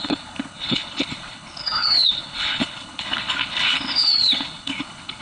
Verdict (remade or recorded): remade